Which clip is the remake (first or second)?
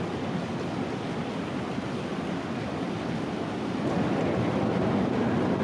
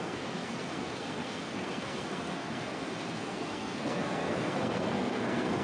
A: second